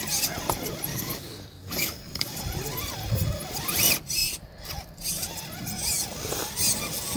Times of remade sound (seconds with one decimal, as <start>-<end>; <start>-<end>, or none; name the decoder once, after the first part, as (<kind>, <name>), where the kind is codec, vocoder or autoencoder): 0.9-2.4 (codec, DAC)